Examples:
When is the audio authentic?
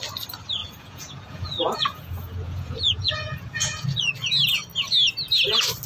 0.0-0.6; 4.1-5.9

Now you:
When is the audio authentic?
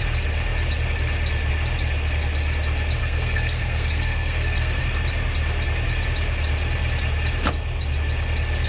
0.0-3.0; 4.8-8.7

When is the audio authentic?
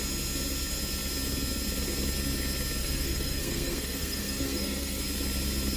0.0-2.8; 5.0-5.8